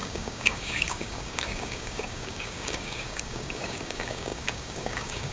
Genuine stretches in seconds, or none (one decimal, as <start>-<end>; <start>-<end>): none